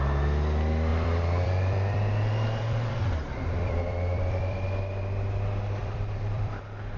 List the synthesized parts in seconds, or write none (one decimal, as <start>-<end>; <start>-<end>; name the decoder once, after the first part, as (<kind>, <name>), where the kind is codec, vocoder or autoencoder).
0.9-4.8 (vocoder, BigVGAN v2); 5.8-6.5